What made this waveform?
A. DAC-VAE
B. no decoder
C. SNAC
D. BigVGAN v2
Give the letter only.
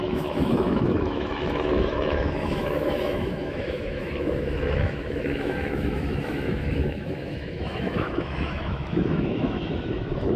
A